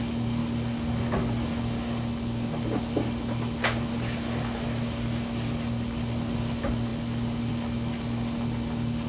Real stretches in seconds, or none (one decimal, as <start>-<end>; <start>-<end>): 0.0-9.1